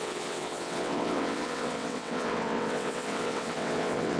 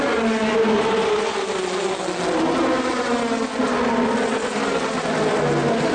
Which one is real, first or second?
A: second